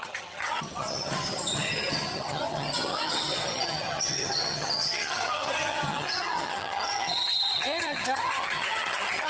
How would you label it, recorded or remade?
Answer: remade